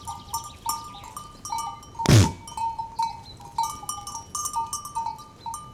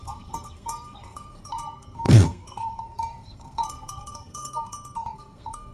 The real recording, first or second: first